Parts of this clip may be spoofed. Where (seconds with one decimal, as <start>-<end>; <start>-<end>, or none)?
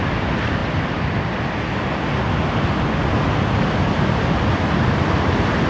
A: none